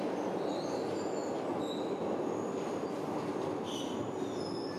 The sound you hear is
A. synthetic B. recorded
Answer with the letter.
B